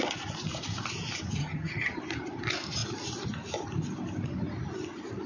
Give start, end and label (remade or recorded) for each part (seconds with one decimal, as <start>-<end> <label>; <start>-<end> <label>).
0.0-1.4 recorded; 1.4-2.0 remade; 2.0-5.3 recorded